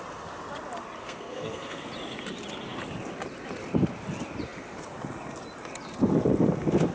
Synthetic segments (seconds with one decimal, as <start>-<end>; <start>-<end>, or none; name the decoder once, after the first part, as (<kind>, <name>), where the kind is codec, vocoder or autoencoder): 1.0-1.9 (codec, SNAC)